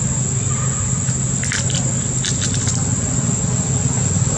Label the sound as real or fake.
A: real